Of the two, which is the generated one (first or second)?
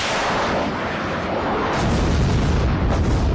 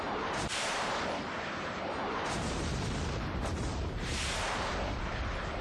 second